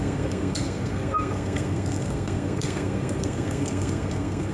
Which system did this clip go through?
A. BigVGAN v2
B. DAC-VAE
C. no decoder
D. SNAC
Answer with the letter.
D